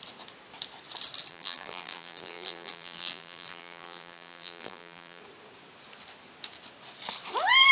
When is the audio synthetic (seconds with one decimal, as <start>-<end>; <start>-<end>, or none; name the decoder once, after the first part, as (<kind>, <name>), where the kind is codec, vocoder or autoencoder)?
1.3-5.2 (vocoder, BigVGAN v2)